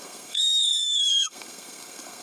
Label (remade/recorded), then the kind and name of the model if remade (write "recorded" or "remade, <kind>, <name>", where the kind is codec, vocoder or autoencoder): remade, codec, SNAC